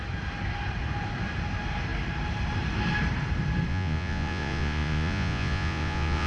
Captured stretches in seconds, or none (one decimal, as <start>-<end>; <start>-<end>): 0.0-3.7